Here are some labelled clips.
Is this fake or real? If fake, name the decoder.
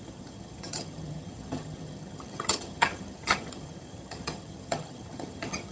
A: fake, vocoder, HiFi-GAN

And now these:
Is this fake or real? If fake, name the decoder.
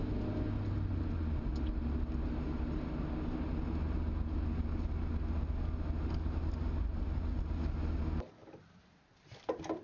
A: real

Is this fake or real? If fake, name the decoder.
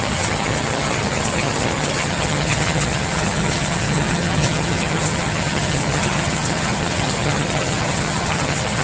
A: fake, vocoder, HiFi-GAN